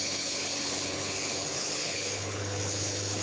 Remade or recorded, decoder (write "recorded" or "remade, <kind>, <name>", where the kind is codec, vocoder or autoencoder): remade, codec, HILCodec